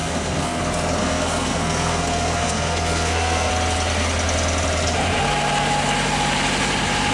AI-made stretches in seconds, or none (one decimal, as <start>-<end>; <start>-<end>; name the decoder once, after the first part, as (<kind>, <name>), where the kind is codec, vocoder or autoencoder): 0.0-0.6 (codec, SNAC); 1.0-3.5